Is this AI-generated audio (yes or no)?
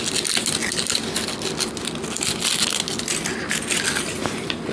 no